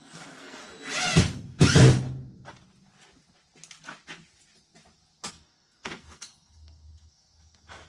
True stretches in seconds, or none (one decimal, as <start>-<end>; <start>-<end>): 0.6-5.3